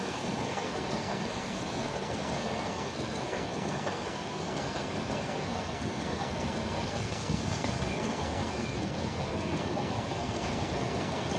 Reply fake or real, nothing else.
fake